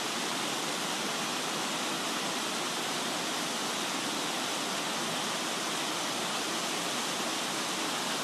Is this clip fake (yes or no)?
no